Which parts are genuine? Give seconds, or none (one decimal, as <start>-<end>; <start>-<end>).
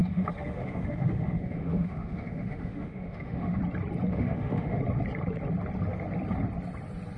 3.6-4.1; 4.8-7.2